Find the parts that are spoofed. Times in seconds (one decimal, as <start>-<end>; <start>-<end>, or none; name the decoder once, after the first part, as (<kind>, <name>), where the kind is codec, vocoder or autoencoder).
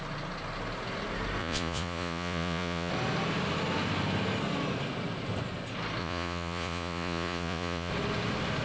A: 1.4-2.9 (vocoder, Vocos); 6.0-7.9